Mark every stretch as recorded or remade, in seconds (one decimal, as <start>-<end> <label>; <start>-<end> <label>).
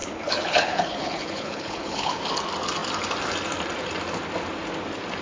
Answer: 0.0-2.2 remade; 2.2-5.2 recorded